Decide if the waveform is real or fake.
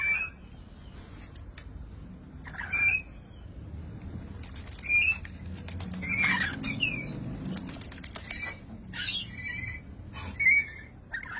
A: real